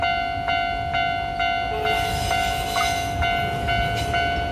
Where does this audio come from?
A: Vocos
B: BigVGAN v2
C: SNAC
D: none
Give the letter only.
D